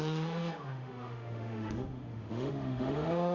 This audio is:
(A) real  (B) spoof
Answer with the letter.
B